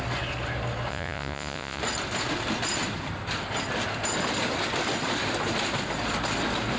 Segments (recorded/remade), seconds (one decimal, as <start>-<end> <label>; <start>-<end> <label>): 0.0-0.9 recorded; 0.9-1.8 remade; 1.8-6.8 recorded